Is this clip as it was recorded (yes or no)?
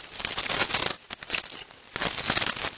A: yes